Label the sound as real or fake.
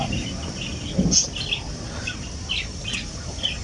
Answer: real